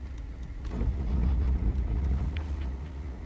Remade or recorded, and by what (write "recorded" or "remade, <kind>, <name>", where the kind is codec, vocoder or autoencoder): remade, vocoder, Vocos